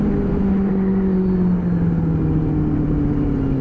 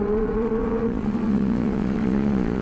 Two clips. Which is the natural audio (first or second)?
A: first